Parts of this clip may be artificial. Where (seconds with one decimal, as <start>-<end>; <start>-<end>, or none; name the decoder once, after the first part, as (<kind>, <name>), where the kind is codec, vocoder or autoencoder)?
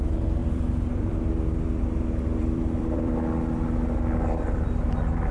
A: 0.4-3.1 (vocoder, BigVGAN v2)